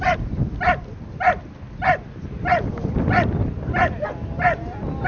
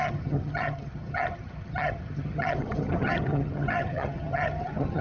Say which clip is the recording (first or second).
first